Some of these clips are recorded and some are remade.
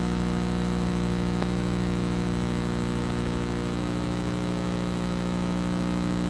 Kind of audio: remade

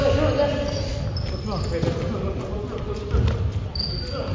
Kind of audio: recorded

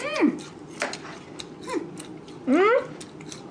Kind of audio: recorded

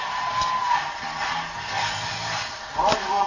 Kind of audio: recorded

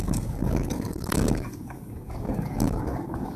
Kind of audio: remade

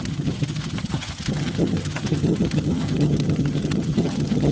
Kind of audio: remade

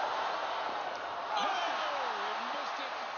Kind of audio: recorded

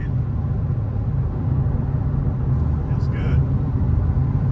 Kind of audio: recorded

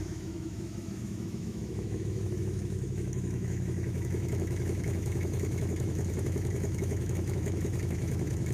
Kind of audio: remade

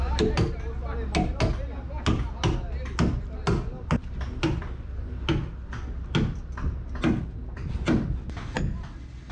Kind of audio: recorded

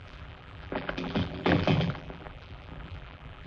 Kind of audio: remade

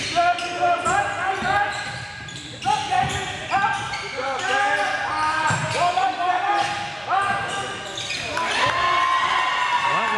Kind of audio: recorded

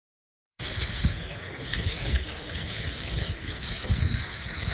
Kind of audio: remade